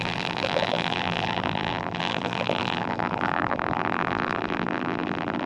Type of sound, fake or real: fake